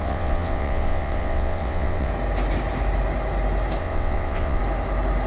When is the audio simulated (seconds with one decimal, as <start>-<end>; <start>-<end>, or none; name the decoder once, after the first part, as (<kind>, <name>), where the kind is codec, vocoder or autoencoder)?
0.0-2.1 (vocoder, WaveNeXt); 3.8-4.6